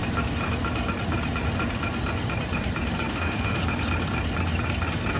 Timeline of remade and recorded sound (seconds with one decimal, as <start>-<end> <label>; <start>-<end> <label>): 0.0-3.1 recorded; 3.1-3.6 remade; 3.6-5.2 recorded